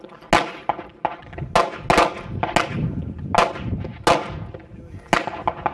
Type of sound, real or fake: real